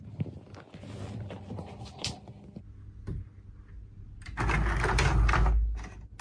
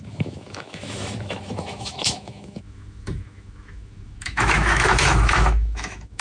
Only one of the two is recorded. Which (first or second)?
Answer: first